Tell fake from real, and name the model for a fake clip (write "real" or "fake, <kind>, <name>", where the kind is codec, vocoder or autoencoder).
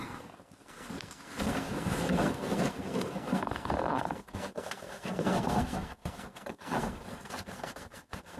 fake, codec, SNAC